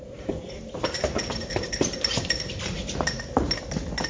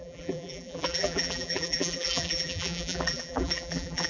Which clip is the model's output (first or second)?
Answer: second